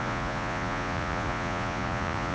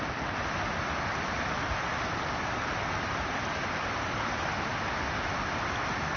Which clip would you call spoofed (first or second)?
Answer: first